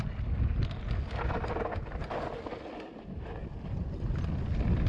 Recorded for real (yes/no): yes